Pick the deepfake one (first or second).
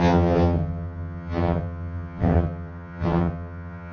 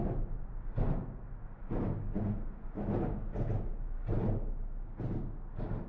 first